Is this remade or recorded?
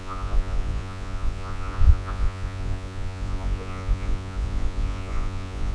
remade